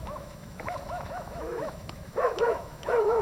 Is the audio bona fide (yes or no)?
no